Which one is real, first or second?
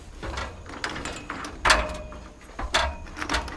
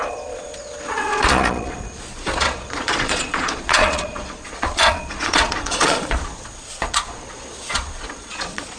first